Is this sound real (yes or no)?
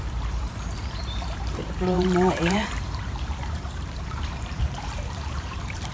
no